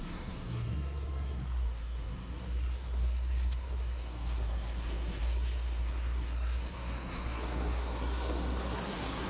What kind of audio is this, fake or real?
fake